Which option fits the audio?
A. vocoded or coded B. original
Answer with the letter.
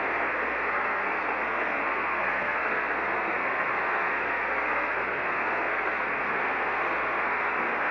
A